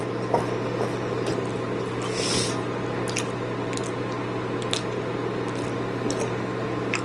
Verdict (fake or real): real